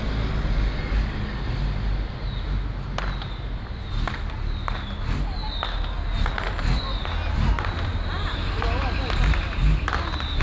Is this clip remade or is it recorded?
recorded